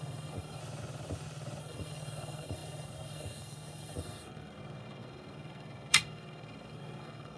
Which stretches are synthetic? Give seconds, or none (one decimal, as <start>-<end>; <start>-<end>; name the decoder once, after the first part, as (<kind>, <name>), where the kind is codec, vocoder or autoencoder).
0.0-0.6 (codec, SNAC); 1.6-7.4